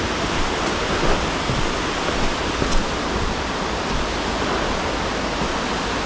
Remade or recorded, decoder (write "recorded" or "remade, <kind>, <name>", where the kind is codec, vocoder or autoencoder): recorded